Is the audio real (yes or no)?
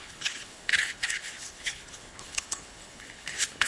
no